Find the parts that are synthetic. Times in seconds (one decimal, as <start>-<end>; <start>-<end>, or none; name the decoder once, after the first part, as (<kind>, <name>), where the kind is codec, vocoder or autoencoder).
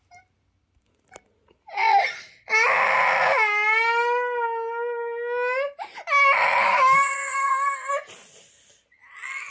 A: 6.6-7.9 (codec, SNAC)